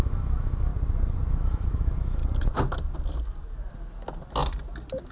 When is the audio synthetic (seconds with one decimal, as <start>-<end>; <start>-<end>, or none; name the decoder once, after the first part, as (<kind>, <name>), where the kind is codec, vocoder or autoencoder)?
0.0-0.7 (autoencoder, DAC-VAE); 1.3-2.2